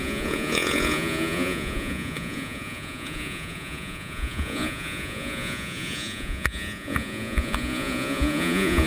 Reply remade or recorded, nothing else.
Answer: remade